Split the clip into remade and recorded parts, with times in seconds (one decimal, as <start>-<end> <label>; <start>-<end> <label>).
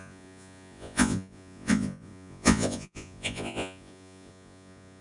0.0-5.0 remade